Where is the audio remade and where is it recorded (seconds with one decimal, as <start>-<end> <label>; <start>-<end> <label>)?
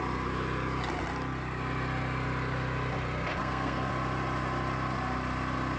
0.0-3.4 recorded; 3.4-3.9 remade; 3.9-5.8 recorded